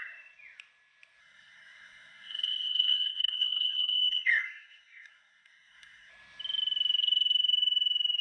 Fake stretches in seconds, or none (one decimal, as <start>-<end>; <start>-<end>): 1.2-6.1